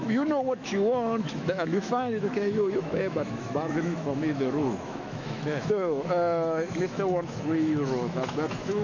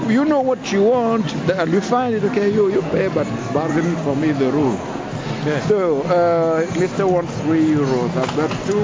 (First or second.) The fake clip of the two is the first